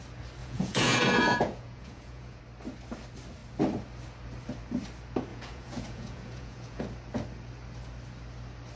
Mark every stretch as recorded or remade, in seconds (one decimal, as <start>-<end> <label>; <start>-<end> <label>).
0.0-0.4 recorded; 0.4-2.4 remade; 2.4-5.3 recorded; 5.3-6.8 remade; 6.8-8.8 recorded

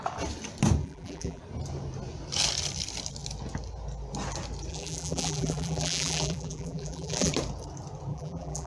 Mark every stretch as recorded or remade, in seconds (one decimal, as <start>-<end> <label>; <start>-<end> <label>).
0.0-0.8 recorded; 0.8-1.4 remade; 1.4-4.7 recorded; 4.7-7.3 remade; 7.3-8.1 recorded; 8.1-8.7 remade

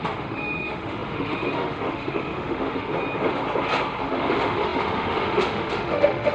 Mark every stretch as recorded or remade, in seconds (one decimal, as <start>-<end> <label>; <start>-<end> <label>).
0.0-2.9 remade; 2.9-4.0 recorded; 4.0-6.3 remade

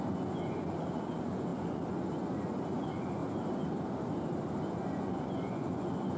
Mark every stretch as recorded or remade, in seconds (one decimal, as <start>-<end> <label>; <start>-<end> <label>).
0.0-3.2 remade; 3.2-4.7 recorded; 4.7-6.2 remade

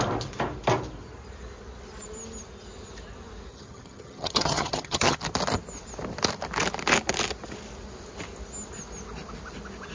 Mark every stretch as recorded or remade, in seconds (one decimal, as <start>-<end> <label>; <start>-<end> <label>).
0.0-3.5 recorded; 3.5-5.2 remade; 5.2-9.9 recorded

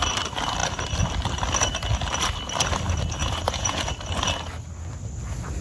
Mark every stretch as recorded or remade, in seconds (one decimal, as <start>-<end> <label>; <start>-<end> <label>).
0.0-3.2 recorded; 3.2-3.9 remade; 3.9-5.6 recorded

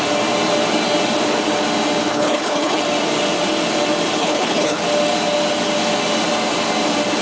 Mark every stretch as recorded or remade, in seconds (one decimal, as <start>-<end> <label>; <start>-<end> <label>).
0.0-2.1 recorded; 2.1-2.8 remade; 2.8-4.2 recorded; 4.2-4.8 remade; 4.8-7.2 recorded

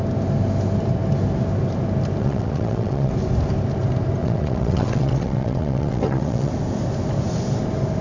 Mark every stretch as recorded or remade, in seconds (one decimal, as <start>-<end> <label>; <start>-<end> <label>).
0.0-2.2 recorded; 2.2-3.1 remade; 3.1-4.2 recorded; 4.2-6.5 remade; 6.5-8.0 recorded